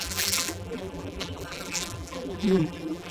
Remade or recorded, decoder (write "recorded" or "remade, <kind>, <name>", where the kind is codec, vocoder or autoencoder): remade, vocoder, BigVGAN v2